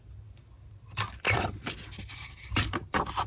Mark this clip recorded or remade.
remade